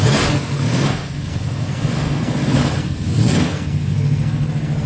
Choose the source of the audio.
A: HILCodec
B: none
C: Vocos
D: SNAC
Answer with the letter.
D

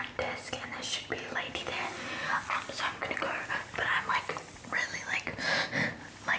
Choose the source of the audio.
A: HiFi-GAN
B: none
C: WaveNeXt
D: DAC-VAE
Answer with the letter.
B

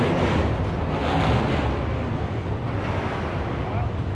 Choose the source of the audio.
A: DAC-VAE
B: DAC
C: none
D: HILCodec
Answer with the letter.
C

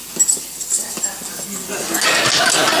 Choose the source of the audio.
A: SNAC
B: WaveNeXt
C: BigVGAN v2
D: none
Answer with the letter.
D